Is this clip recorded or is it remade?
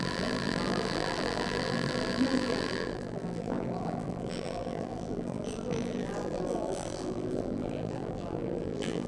remade